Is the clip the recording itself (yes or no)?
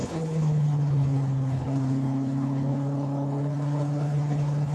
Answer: no